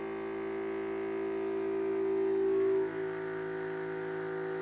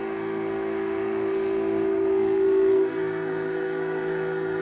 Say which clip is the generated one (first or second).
second